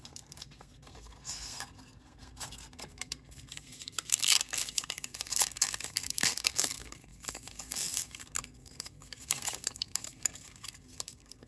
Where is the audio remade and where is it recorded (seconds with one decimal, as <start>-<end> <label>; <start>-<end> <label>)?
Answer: 0.0-11.5 remade